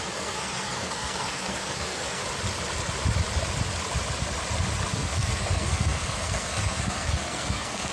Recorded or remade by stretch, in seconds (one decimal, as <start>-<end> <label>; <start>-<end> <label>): 0.0-2.2 remade; 2.2-4.9 recorded; 4.9-7.9 remade